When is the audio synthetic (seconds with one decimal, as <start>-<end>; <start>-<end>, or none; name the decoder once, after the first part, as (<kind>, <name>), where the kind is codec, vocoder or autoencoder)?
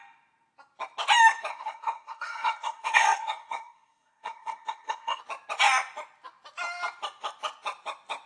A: 1.5-5.2 (codec, SNAC)